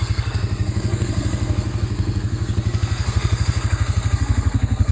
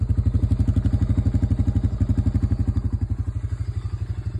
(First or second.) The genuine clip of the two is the second